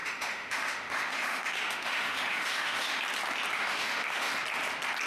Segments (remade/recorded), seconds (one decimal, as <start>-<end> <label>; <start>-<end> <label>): 0.0-3.0 remade; 3.0-3.5 recorded; 3.5-4.3 remade; 4.3-5.1 recorded